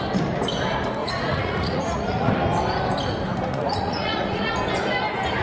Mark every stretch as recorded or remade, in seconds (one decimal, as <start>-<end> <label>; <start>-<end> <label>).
0.0-1.0 recorded; 1.0-2.3 remade; 2.3-3.5 recorded; 3.5-4.5 remade; 4.5-5.4 recorded